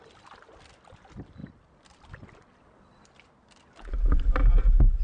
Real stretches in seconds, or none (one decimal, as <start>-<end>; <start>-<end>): 0.0-5.0